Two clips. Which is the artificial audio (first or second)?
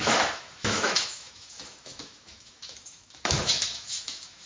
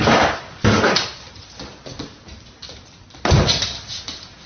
first